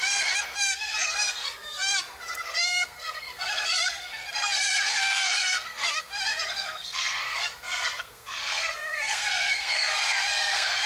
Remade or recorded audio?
remade